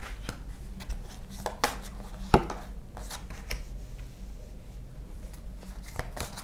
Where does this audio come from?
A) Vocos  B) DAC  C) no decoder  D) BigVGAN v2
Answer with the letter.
C